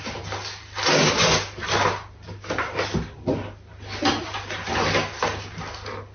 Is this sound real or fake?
real